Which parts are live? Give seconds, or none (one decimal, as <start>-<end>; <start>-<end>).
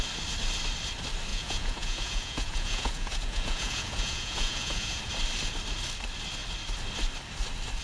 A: 0.0-1.3; 5.0-7.8